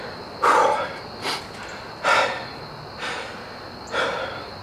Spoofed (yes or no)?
no